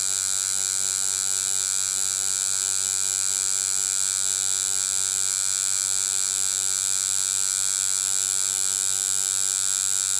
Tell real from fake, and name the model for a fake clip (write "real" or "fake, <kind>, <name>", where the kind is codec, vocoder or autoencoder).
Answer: real